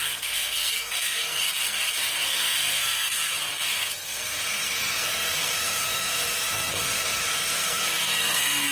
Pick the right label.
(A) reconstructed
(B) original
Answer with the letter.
A